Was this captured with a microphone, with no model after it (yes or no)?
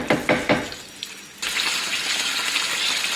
yes